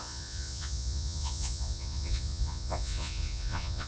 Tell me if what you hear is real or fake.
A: fake